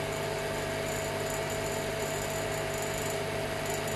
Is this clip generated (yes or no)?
no